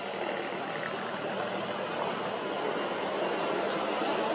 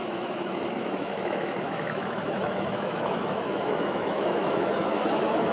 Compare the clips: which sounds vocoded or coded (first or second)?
second